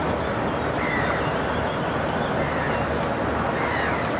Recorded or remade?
recorded